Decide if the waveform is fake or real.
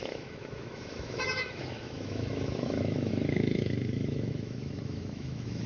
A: fake